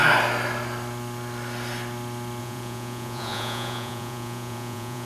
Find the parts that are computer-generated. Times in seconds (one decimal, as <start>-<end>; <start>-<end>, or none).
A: 2.4-5.1